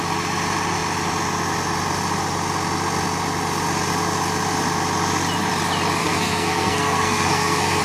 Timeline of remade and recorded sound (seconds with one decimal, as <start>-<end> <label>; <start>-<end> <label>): 0.0-6.0 recorded; 6.0-7.8 remade